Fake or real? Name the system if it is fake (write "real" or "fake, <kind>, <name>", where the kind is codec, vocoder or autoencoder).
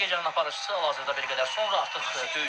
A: real